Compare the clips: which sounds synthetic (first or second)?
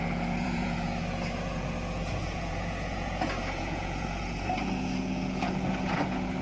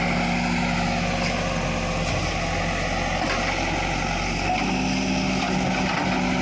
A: first